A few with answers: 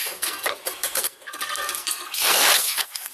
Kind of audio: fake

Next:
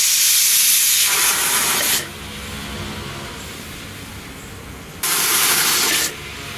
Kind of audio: real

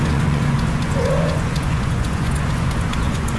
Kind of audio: fake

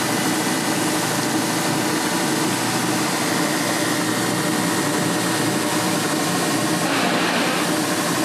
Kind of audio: real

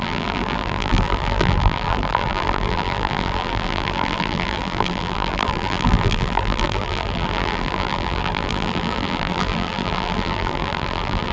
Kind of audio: fake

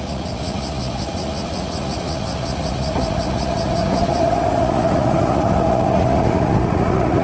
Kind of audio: fake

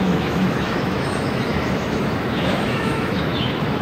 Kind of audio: fake